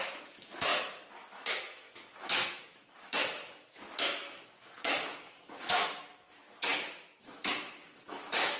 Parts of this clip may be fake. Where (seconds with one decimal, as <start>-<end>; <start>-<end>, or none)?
0.0-8.6